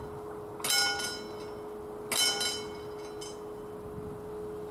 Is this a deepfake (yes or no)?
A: no